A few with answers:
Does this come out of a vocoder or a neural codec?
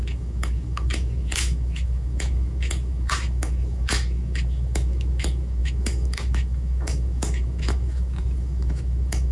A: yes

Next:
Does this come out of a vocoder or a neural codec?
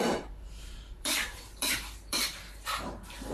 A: yes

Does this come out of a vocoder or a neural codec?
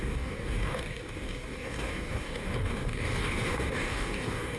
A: yes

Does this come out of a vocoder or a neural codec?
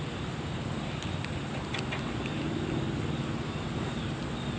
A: no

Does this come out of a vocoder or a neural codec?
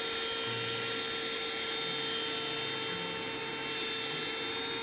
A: no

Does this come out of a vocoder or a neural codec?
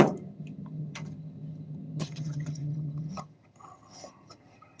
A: yes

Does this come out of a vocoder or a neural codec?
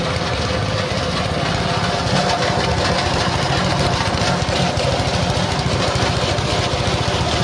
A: no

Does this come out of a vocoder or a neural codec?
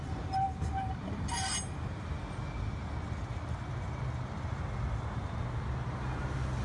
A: no